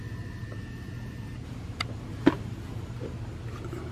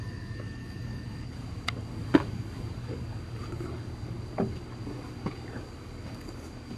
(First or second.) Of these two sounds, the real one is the first